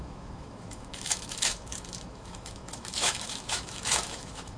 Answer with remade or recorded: remade